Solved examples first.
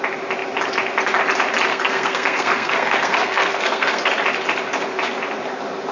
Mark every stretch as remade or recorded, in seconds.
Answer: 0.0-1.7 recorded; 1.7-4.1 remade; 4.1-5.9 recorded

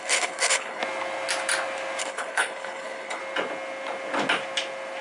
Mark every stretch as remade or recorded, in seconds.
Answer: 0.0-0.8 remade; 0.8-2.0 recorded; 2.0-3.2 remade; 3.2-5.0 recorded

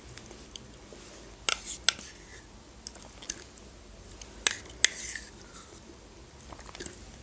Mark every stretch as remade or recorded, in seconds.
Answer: 0.0-7.2 recorded

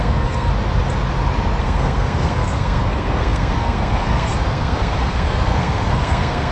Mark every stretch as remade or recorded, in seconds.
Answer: 0.0-0.5 remade; 0.5-1.6 recorded; 1.6-6.5 remade

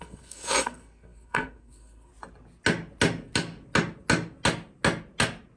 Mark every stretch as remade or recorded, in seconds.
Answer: 0.0-2.1 remade; 2.1-5.6 recorded

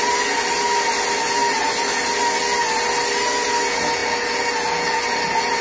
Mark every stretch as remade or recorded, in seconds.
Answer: 0.0-5.6 recorded

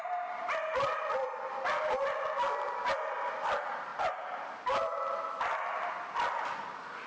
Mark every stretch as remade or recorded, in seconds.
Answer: 0.0-7.1 recorded

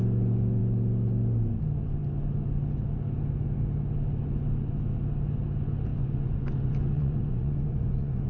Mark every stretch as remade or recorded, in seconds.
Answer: 0.0-5.9 recorded; 5.9-8.3 remade